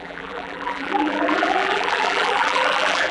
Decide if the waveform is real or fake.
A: fake